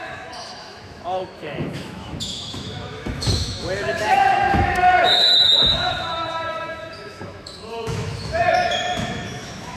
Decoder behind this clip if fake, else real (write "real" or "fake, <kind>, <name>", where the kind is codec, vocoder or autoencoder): fake, autoencoder, DAC-VAE